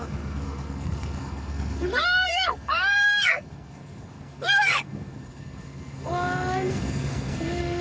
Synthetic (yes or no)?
yes